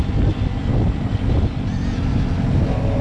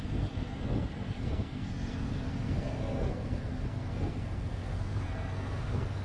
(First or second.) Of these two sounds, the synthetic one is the second